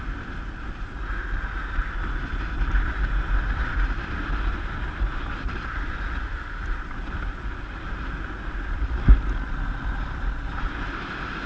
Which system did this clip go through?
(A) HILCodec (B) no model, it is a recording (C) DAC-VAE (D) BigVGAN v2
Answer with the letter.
D